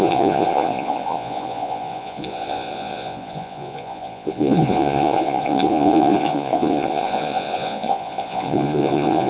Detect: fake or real fake